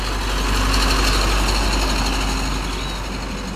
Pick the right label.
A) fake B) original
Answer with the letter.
B